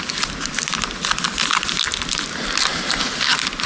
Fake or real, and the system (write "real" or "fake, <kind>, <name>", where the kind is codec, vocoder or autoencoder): real